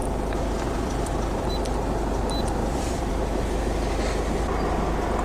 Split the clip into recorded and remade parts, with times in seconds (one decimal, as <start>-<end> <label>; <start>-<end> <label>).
0.0-1.5 remade; 1.5-2.6 recorded; 2.6-3.1 remade; 3.1-5.2 recorded